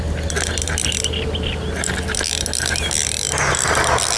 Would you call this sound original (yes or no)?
yes